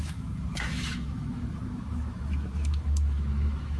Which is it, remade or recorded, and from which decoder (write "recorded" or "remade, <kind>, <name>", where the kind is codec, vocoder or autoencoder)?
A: remade, autoencoder, DAC-VAE